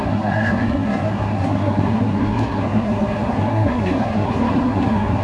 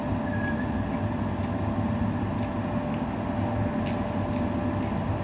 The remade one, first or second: first